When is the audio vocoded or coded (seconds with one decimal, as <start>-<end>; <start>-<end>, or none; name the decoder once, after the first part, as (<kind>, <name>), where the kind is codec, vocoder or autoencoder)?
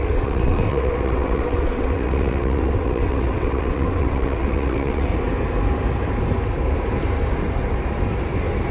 0.0-5.1 (vocoder, WaveNeXt)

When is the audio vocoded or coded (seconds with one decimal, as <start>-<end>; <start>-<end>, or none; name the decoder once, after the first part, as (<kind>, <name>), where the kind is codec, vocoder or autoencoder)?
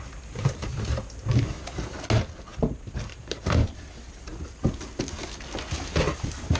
2.5-3.7 (vocoder, BigVGAN v2)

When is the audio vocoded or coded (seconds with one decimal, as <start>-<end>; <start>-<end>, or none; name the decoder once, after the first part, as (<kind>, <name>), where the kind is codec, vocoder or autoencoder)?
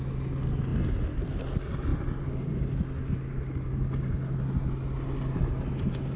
none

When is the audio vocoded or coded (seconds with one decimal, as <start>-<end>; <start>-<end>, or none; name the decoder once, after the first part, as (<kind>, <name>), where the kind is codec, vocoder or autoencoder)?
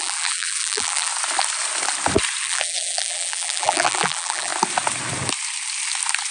0.0-1.1 (vocoder, BigVGAN v2); 2.4-4.5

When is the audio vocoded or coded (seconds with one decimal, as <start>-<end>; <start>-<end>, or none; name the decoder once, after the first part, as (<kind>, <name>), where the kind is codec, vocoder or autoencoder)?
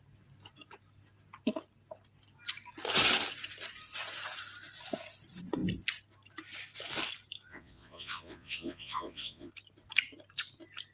7.5-9.5 (vocoder, Vocos)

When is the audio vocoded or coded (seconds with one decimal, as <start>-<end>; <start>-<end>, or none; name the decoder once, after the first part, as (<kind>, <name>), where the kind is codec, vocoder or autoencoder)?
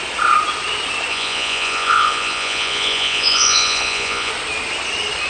1.1-4.3 (vocoder, Vocos)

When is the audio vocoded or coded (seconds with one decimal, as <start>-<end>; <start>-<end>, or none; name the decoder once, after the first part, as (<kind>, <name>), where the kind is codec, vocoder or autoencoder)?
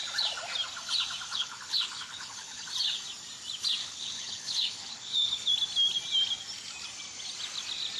1.3-2.6 (codec, HILCodec); 3.8-5.5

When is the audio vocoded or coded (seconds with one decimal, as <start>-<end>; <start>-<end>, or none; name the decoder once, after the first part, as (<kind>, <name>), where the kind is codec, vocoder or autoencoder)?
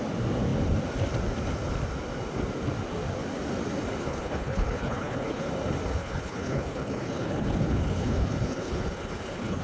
4.0-5.5 (codec, HILCodec); 6.0-9.6